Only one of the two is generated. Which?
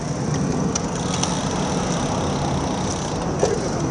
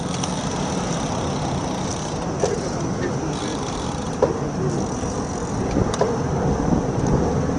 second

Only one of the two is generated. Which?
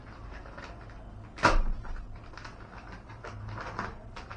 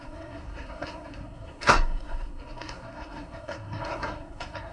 second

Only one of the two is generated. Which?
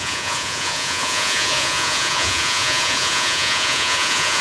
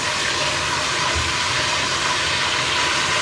first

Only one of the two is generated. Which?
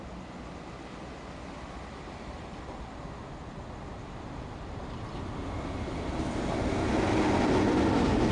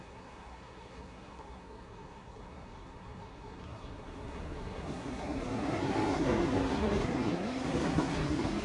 second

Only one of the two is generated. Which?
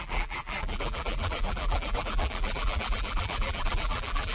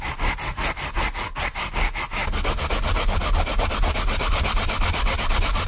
first